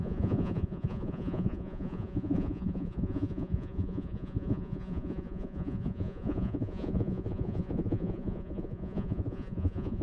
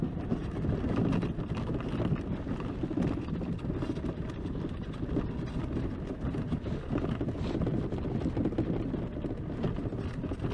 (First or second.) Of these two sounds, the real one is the second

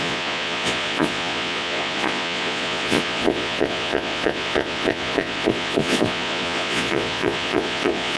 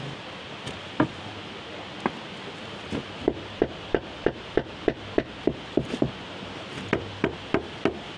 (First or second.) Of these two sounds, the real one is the second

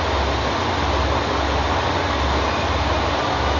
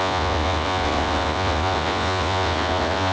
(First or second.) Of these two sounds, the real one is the first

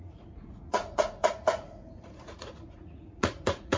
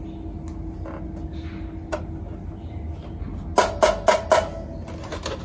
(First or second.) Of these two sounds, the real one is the second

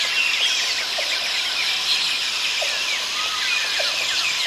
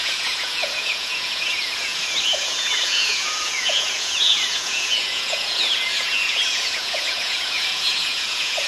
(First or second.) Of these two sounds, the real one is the first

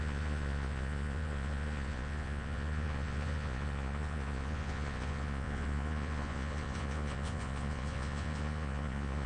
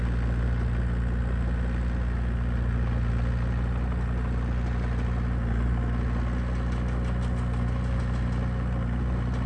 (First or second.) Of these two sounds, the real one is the second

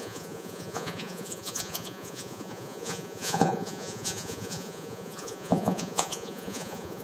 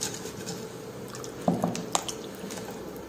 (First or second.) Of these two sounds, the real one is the second